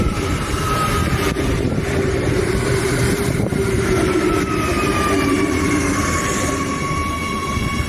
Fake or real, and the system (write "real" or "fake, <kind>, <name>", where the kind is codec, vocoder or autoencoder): fake, vocoder, BigVGAN v2